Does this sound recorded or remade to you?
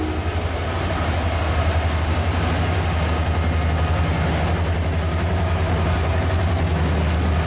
recorded